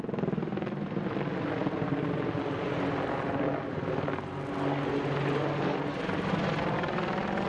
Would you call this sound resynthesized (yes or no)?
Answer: no